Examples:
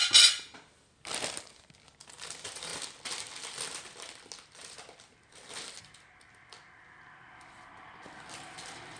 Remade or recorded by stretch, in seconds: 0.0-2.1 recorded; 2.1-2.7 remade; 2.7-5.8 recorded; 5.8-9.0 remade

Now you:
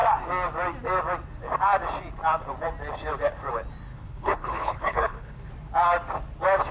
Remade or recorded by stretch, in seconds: 0.0-3.9 recorded; 3.9-5.5 remade; 5.5-6.7 recorded

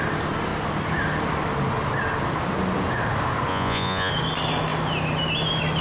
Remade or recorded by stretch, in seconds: 0.0-3.5 recorded; 3.5-4.1 remade; 4.1-5.8 recorded

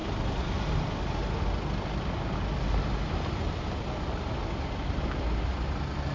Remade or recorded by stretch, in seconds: 0.0-6.1 recorded

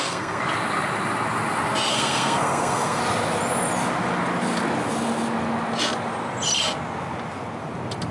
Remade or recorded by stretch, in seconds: 0.0-0.4 remade; 0.4-1.9 recorded; 1.9-3.0 remade; 3.0-8.1 recorded

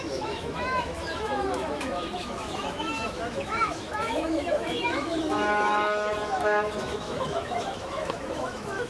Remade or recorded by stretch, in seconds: 0.0-8.9 remade

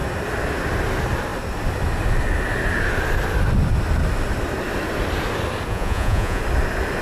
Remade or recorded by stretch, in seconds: 0.0-5.7 recorded; 5.7-6.4 remade; 6.4-7.0 recorded